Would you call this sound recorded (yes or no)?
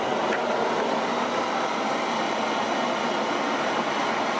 yes